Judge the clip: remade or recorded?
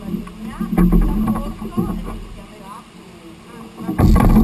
recorded